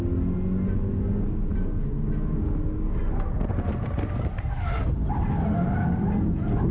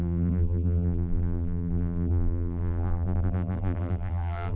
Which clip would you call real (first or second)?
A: first